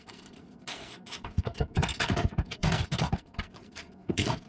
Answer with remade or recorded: remade